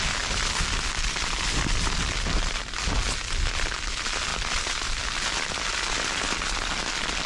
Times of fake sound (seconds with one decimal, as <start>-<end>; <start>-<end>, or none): none